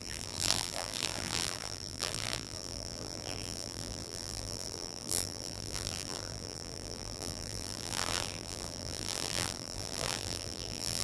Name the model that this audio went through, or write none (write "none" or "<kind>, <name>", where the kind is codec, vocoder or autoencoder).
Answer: vocoder, BigVGAN v2